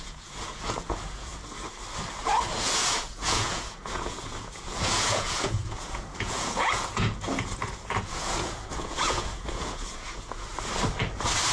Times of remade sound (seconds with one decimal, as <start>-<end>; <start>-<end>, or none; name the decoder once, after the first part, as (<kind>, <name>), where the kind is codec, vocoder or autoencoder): 0.0-1.3 (vocoder, Vocos); 2.6-10.5